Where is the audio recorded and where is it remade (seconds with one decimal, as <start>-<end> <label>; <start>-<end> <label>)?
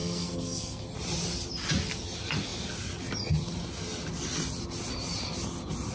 0.0-0.9 remade; 0.9-5.9 recorded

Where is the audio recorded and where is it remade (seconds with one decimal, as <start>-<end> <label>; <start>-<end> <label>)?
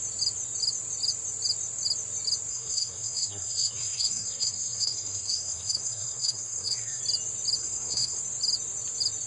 0.0-2.5 recorded; 2.5-7.0 remade; 7.0-7.6 recorded; 7.6-8.2 remade; 8.2-9.3 recorded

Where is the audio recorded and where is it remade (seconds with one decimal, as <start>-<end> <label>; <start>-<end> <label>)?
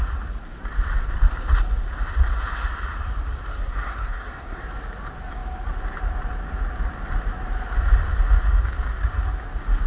0.0-3.5 recorded; 3.5-4.6 remade; 4.6-9.9 recorded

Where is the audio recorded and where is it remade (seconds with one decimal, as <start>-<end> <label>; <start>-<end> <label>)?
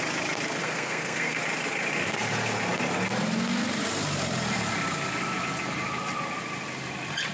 0.0-0.6 recorded; 0.6-1.4 remade; 1.4-7.3 recorded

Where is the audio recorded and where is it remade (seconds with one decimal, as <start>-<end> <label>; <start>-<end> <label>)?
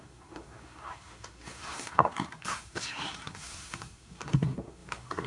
0.0-5.3 remade